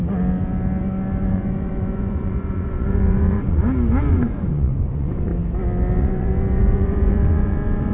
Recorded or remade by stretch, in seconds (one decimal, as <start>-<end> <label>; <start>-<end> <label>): 0.0-1.2 recorded; 1.2-3.6 remade; 3.6-4.1 recorded; 4.1-5.3 remade; 5.3-6.0 recorded; 6.0-7.9 remade